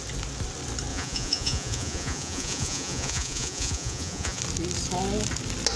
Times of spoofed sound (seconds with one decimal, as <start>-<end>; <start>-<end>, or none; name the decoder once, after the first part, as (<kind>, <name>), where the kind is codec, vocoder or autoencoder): 0.9-4.4 (vocoder, Vocos)